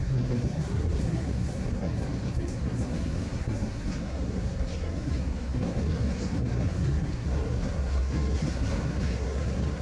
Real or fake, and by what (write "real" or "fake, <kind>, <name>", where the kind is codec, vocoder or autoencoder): fake, codec, SNAC